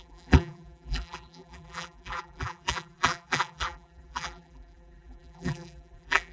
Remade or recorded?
remade